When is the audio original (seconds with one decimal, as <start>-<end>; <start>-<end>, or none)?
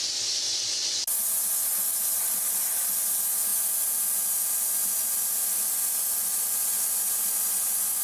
0.0-8.0